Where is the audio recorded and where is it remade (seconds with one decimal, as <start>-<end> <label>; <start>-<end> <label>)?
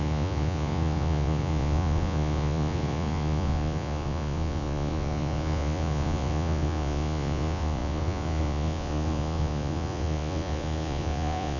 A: 0.0-11.6 remade